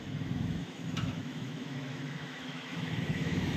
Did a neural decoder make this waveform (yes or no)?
yes